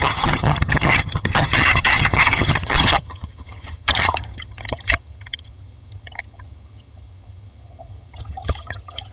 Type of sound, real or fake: fake